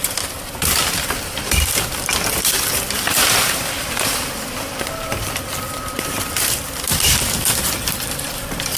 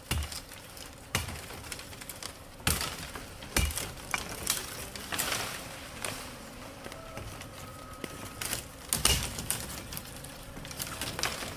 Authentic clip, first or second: second